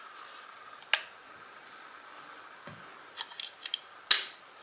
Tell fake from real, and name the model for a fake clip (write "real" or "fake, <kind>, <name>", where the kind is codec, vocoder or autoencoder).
real